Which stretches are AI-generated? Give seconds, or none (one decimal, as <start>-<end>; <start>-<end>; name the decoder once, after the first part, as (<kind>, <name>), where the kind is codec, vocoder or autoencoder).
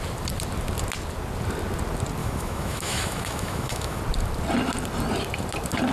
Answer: 2.2-4.0 (autoencoder, DAC-VAE)